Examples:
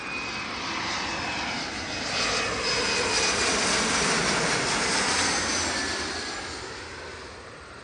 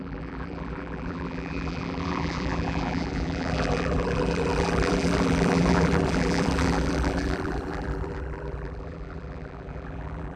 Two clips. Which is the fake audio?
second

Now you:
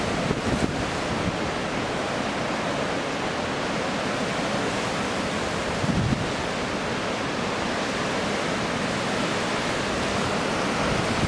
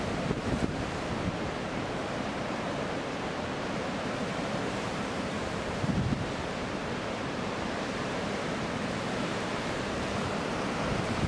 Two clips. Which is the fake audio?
second